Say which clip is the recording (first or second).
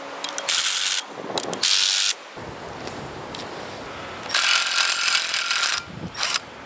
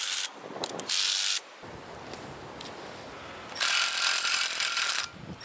first